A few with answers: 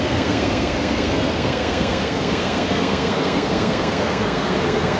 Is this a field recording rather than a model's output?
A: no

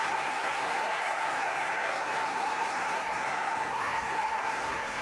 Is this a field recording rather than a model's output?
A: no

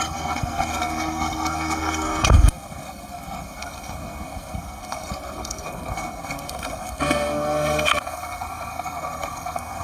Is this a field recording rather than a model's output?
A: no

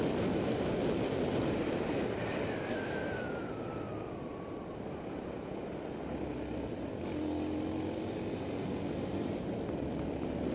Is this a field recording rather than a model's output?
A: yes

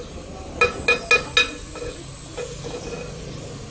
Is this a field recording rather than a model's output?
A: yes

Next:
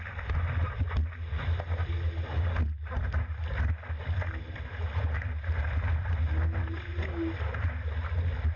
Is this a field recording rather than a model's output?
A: yes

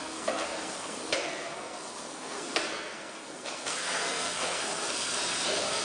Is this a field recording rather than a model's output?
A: no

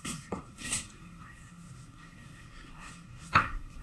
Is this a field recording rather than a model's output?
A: no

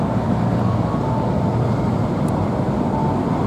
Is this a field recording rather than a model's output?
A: yes